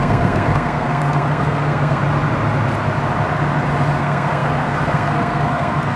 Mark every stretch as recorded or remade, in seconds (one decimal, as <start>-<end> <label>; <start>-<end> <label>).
0.0-2.0 remade; 2.0-4.0 recorded; 4.0-6.0 remade